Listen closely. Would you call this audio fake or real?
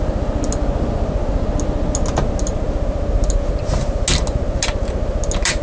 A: real